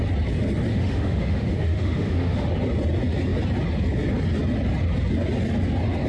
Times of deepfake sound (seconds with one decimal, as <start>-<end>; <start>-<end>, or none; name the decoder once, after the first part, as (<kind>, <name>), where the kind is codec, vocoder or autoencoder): 0.7-2.5 (autoencoder, DAC-VAE)